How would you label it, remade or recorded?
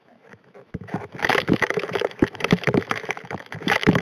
remade